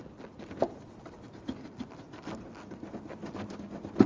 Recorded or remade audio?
recorded